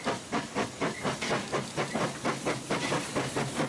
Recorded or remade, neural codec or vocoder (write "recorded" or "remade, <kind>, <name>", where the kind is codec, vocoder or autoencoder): recorded